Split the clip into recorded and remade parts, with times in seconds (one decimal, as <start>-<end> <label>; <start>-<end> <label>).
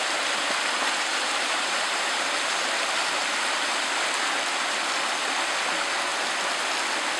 0.0-1.1 recorded; 1.1-2.6 remade; 2.6-7.2 recorded